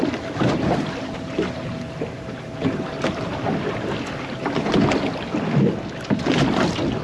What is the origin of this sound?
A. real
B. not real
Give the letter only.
A